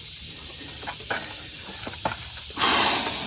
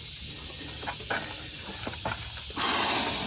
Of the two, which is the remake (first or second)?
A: first